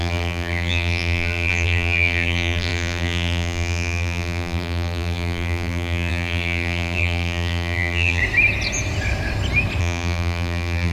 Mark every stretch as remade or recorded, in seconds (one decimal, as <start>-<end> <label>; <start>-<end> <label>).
0.0-8.2 remade; 8.2-9.8 recorded; 9.8-10.9 remade